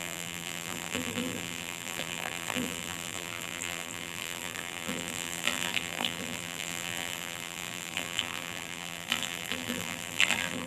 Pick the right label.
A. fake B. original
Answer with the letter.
A